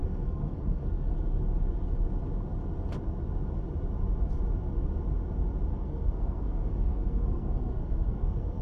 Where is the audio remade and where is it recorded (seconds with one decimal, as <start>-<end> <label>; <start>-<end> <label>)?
0.0-1.1 remade; 1.1-5.7 recorded; 5.7-8.6 remade